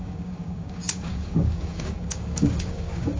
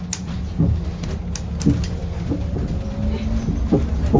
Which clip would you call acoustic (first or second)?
second